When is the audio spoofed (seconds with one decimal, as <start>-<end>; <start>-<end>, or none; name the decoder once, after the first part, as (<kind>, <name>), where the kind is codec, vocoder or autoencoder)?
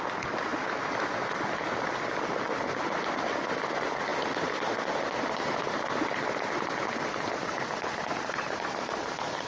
none